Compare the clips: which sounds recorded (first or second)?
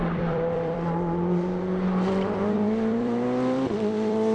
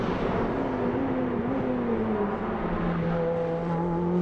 second